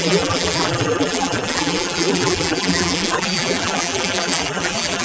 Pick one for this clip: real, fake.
fake